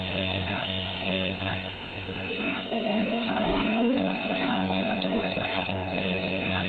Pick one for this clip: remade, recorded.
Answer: remade